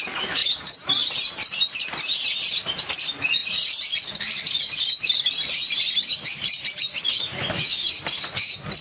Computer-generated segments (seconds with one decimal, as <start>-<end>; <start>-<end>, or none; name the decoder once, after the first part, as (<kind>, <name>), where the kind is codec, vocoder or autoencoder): 6.9-7.9 (autoencoder, DAC-VAE)

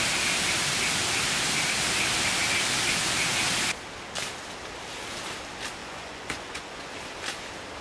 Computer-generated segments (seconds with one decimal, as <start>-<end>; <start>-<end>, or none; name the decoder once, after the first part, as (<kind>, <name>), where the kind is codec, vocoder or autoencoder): 5.8-6.9 (vocoder, Vocos)

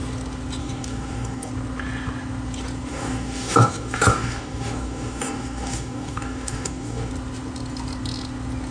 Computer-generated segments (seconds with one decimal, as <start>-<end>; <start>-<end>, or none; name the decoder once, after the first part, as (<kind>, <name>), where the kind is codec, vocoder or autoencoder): 0.6-1.5 (codec, DAC); 2.9-7.1

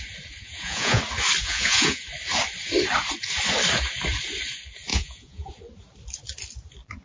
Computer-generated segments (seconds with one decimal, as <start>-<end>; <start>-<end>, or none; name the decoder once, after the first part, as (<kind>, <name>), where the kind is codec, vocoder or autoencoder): 0.4-1.0 (vocoder, Vocos); 1.4-2.0; 4.9-5.5

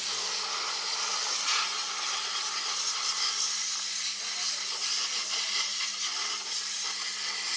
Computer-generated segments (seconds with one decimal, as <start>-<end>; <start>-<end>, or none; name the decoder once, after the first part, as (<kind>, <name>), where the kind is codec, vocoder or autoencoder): 6.2-7.0 (vocoder, BigVGAN v2)